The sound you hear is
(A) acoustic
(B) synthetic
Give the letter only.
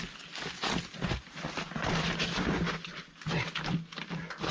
A